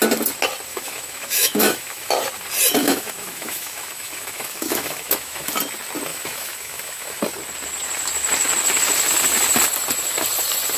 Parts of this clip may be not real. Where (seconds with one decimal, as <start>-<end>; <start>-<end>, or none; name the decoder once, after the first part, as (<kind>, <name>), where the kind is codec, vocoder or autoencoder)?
0.7-2.1 (autoencoder, DAC-VAE); 2.8-5.5; 6.1-7.2